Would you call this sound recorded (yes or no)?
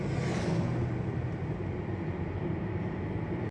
yes